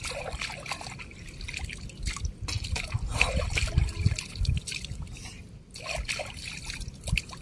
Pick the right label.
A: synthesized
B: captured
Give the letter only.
B